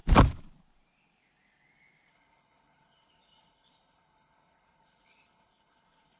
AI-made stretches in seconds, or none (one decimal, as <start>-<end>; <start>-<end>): 2.1-6.2